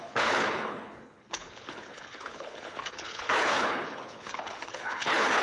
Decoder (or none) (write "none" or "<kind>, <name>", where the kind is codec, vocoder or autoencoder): codec, HILCodec